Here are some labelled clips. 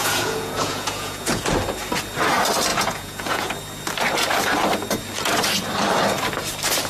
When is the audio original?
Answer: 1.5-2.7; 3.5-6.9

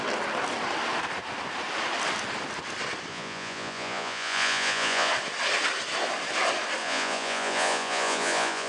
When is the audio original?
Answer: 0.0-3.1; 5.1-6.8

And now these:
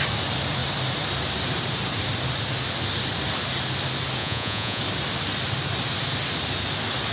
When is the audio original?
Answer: 0.0-4.2; 4.8-7.1

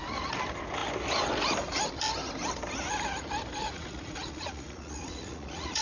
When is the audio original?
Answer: 0.0-3.6

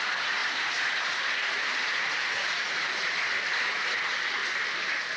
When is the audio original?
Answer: 0.4-0.9; 3.1-3.7; 4.4-5.2